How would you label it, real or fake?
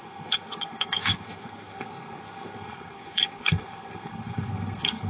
fake